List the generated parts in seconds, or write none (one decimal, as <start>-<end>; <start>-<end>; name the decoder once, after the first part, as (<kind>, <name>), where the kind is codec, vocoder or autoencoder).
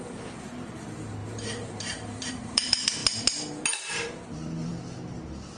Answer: 0.0-3.0 (vocoder, BigVGAN v2); 3.9-4.7